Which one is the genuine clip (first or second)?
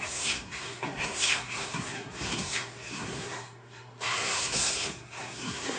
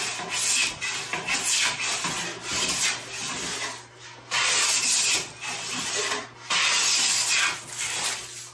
second